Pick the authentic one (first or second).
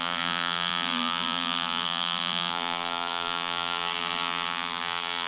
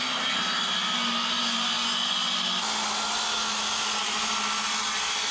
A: second